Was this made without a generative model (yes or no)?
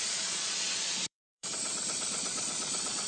no